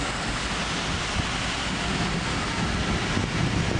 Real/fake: real